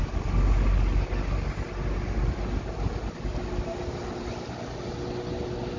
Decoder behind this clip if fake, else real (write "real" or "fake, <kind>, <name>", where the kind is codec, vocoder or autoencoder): real